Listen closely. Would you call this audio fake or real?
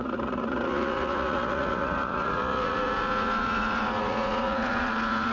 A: fake